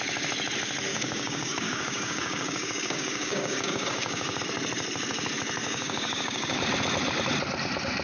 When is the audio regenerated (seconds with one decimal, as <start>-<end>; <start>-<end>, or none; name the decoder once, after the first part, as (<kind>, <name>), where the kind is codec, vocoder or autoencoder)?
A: 0.9-4.4 (codec, DAC); 5.6-6.6